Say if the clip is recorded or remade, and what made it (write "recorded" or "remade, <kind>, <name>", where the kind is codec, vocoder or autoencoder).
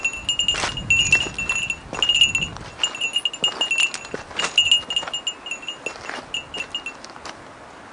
recorded